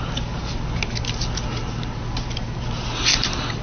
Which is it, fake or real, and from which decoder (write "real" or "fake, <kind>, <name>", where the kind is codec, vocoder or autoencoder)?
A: real